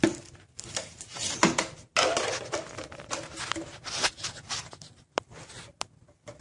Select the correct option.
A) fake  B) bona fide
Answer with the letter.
B